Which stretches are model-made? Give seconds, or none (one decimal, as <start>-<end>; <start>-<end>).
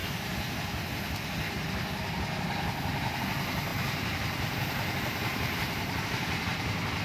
3.7-6.0